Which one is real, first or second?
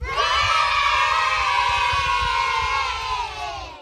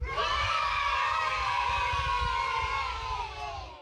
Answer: first